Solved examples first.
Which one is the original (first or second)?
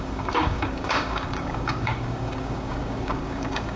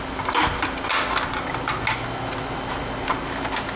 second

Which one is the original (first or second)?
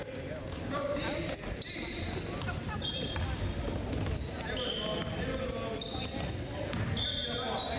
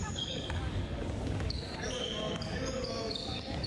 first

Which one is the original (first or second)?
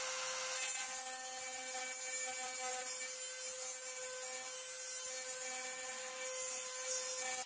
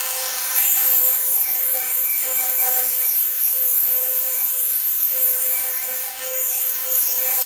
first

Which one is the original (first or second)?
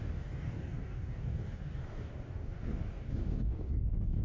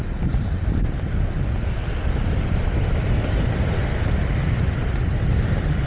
second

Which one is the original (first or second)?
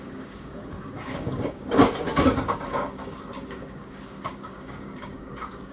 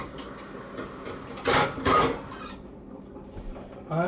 second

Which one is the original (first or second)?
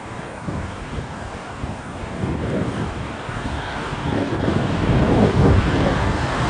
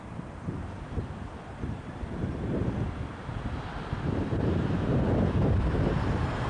second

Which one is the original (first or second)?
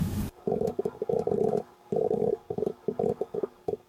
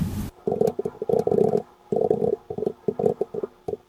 second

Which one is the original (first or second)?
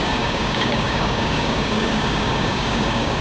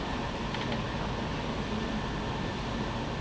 second